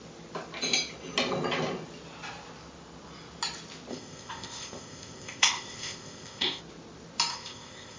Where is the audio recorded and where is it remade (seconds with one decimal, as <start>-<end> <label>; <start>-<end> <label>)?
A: 0.0-3.9 recorded; 3.9-6.6 remade; 6.6-7.3 recorded; 7.3-8.0 remade